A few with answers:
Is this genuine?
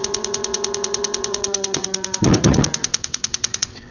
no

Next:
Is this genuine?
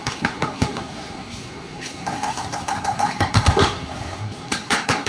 no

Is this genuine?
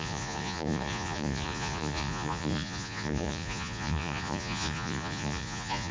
no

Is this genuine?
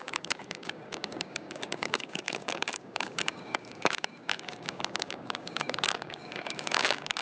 no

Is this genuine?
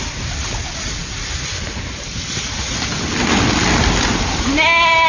yes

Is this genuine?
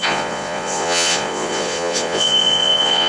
no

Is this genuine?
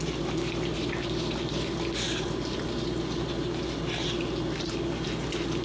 yes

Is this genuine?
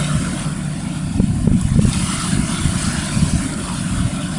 yes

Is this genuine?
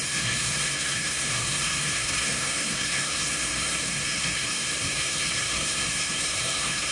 no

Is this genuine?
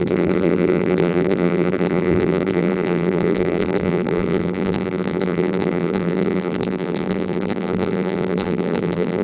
no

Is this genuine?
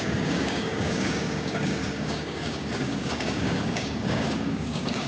no